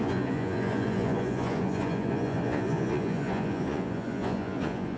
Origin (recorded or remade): remade